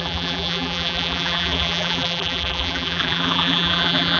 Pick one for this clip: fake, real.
fake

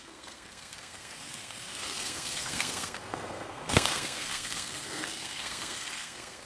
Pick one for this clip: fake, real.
fake